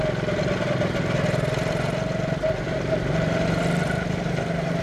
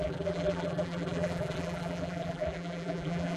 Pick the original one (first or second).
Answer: first